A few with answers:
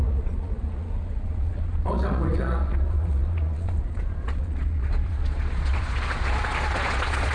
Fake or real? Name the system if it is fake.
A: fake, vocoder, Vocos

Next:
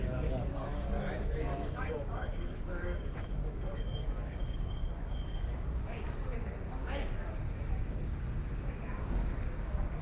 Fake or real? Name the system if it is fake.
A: fake, codec, DAC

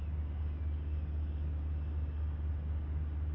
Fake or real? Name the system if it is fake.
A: real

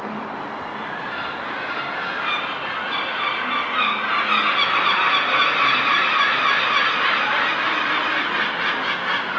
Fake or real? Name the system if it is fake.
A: real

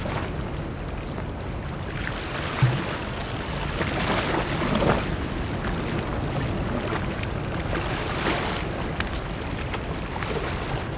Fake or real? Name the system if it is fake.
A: real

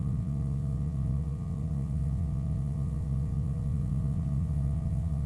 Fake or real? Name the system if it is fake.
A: fake, vocoder, WaveNeXt